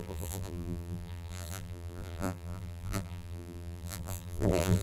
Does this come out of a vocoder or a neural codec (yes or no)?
yes